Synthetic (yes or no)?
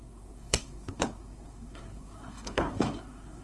yes